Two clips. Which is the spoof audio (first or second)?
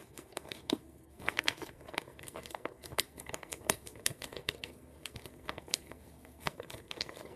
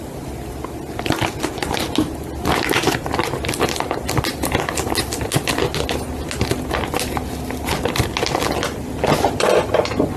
first